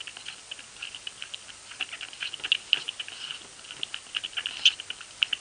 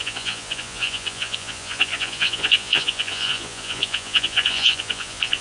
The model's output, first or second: second